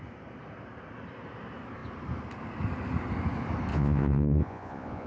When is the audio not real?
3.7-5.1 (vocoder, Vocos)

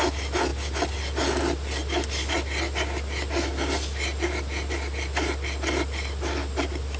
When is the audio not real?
none

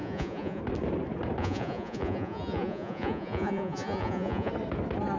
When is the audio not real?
0.0-0.6 (vocoder, Vocos); 1.4-4.5

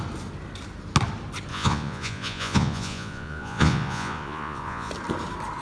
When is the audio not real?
1.5-4.9 (vocoder, Vocos)